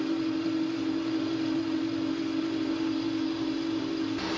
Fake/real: real